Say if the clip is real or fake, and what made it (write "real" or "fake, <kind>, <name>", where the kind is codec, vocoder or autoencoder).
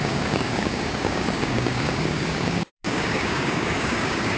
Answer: fake, codec, DAC